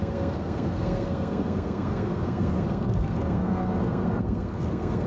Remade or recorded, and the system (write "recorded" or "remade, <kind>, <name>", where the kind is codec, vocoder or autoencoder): remade, codec, SNAC